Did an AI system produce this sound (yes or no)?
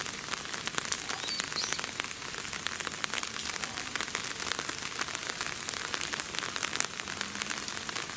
no